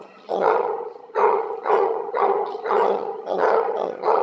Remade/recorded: remade